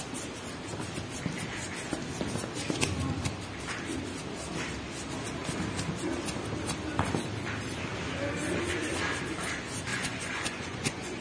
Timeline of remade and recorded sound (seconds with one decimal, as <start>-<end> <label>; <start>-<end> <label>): 0.0-9.9 recorded; 9.9-11.2 remade